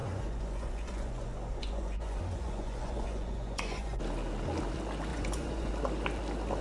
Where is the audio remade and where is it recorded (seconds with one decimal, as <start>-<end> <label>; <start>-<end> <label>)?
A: 0.0-4.0 remade; 4.0-5.1 recorded; 5.1-5.7 remade; 5.7-6.6 recorded